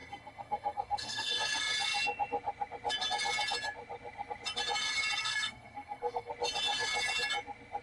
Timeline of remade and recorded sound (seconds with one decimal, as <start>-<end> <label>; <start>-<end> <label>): 0.0-1.4 remade; 1.4-5.2 recorded; 5.2-6.3 remade; 6.3-7.8 recorded